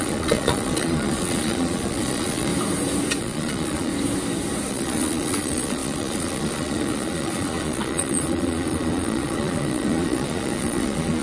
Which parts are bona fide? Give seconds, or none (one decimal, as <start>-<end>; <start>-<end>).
2.5-3.2; 3.9-4.7